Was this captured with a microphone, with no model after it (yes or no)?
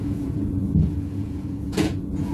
no